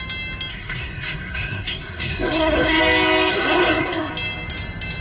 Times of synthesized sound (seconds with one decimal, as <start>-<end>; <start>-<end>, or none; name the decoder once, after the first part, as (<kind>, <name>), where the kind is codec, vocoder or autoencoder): 0.5-2.8 (codec, SNAC); 3.3-4.1